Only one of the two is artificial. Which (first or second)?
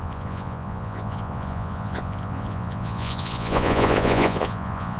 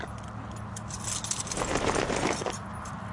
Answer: first